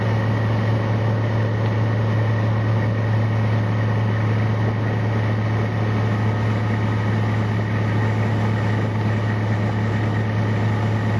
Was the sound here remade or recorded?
recorded